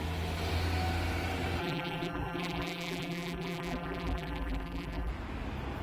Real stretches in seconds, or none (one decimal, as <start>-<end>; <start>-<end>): 0.0-1.6; 5.1-5.8